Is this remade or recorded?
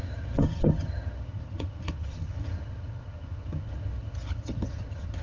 remade